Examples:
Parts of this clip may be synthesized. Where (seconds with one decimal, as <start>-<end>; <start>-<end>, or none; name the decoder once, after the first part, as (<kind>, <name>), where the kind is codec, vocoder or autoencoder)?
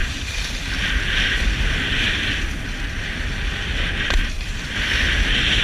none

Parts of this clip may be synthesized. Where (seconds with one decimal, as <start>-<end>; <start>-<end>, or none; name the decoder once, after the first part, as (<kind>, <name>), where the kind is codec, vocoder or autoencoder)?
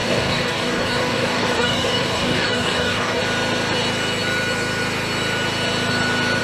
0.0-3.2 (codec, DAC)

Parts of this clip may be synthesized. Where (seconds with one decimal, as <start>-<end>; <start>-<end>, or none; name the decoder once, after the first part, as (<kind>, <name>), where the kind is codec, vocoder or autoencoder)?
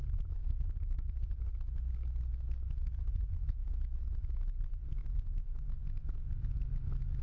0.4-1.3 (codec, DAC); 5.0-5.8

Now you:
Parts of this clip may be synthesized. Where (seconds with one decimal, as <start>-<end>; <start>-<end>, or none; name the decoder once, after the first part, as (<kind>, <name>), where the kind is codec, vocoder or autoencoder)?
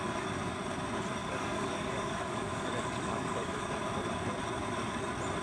1.2-3.7 (codec, DAC)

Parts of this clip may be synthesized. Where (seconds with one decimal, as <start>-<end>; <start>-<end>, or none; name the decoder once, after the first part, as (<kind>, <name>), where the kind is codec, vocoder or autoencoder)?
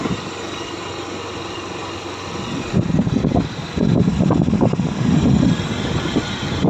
none